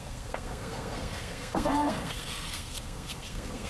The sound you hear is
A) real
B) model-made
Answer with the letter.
B